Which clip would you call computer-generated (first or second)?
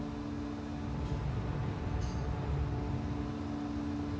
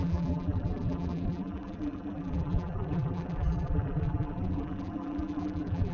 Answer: second